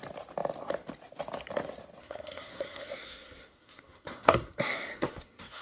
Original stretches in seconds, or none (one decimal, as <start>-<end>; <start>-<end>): 0.0-2.0